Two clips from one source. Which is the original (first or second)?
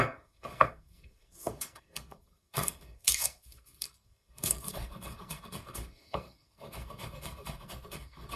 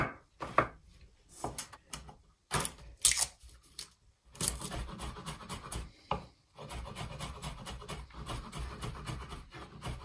second